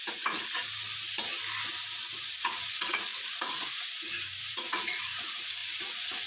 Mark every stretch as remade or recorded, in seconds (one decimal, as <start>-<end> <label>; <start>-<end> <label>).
0.0-0.6 remade; 0.6-2.4 recorded; 2.4-6.3 remade

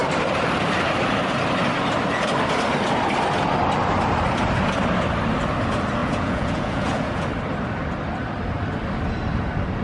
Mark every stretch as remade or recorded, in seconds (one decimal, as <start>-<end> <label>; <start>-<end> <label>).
0.0-6.0 recorded; 6.0-7.3 remade; 7.3-9.8 recorded

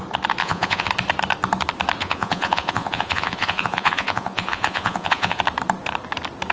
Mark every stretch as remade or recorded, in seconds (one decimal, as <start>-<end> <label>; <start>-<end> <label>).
0.0-0.4 recorded; 0.4-0.9 remade; 0.9-2.0 recorded; 2.0-5.4 remade; 5.4-6.5 recorded

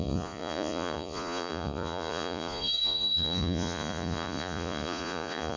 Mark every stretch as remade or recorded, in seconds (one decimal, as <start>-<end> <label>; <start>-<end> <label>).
0.0-5.6 remade

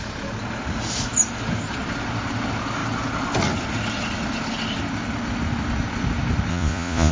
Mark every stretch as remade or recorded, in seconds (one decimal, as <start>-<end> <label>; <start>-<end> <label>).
0.0-6.5 recorded; 6.5-7.1 remade

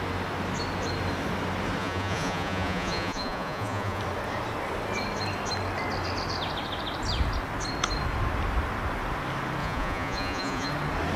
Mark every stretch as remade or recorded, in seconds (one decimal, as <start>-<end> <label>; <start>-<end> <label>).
0.0-1.8 recorded; 1.8-4.0 remade; 4.0-9.6 recorded; 9.6-10.7 remade; 10.7-11.2 recorded

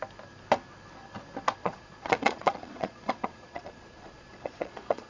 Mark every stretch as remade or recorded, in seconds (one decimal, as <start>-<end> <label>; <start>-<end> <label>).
0.0-1.6 recorded; 1.6-5.1 remade

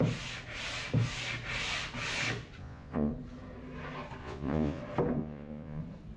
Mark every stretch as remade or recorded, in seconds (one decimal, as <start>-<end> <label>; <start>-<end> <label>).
0.0-2.6 recorded; 2.6-3.1 remade; 3.1-4.2 recorded; 4.2-4.8 remade; 4.8-5.2 recorded; 5.2-5.8 remade; 5.8-6.2 recorded